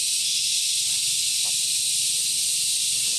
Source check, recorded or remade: recorded